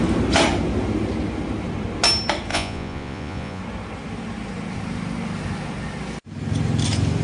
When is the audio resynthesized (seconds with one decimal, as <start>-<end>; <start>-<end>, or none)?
2.5-3.6